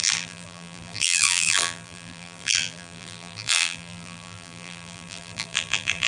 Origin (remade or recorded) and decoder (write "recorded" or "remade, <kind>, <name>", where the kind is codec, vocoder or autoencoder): remade, vocoder, BigVGAN v2